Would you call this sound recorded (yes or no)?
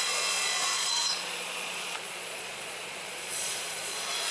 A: no